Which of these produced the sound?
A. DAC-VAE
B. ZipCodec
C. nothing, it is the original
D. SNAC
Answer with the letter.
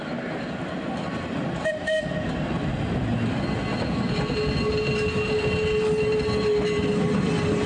C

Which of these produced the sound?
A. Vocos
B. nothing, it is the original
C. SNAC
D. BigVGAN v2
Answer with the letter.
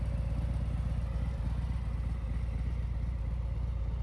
B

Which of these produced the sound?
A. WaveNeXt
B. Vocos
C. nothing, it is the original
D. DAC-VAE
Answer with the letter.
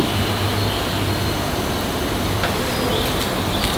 C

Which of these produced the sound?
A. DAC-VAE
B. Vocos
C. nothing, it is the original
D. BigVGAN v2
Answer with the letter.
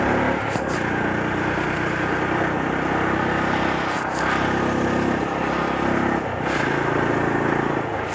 C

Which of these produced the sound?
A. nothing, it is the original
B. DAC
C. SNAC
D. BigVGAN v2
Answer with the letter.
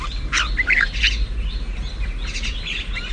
A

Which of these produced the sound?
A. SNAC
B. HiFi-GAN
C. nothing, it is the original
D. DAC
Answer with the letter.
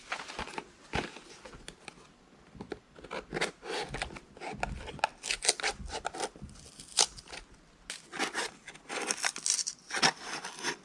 C